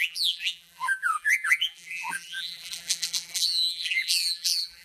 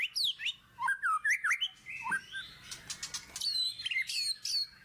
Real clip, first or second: second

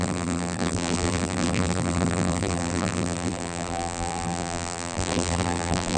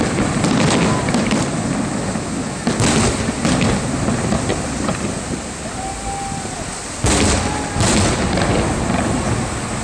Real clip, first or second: second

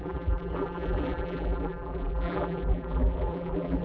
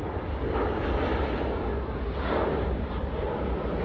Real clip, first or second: second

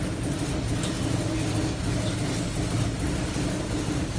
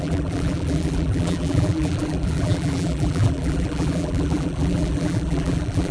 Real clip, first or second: first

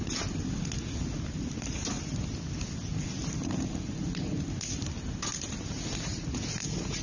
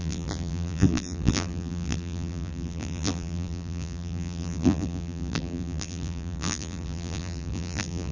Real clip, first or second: first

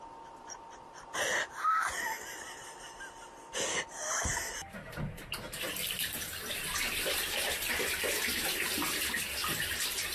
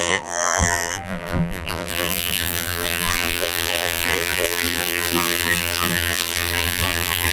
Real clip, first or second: first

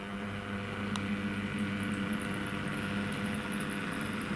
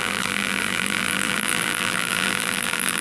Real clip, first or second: first